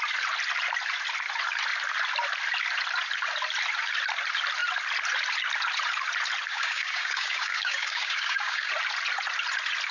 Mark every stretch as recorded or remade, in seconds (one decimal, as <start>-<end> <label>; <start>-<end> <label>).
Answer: 0.0-6.5 recorded; 6.5-8.7 remade; 8.7-9.9 recorded